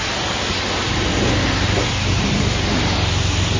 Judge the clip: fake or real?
real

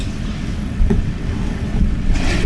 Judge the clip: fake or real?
fake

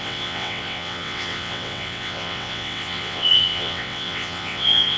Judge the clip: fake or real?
fake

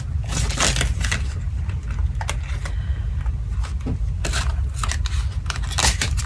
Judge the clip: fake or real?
real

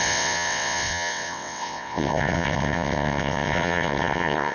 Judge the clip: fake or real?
fake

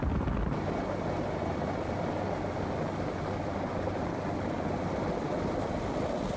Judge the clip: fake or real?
real